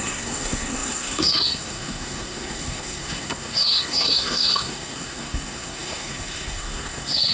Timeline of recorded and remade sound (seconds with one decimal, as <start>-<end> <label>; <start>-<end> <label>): 0.0-7.3 remade